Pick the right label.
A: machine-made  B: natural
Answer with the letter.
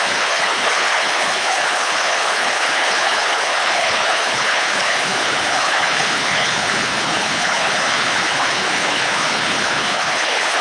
A